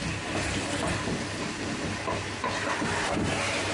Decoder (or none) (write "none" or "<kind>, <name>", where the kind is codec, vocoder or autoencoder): none